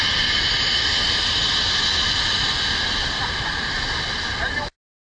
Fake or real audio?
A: real